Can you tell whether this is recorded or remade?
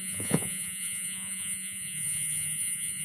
remade